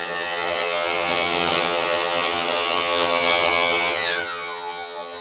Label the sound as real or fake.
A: fake